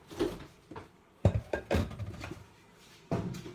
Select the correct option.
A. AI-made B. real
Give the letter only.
B